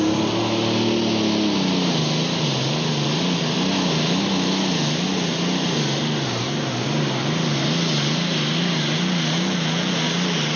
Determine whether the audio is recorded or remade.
recorded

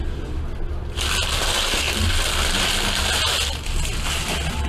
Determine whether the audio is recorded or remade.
recorded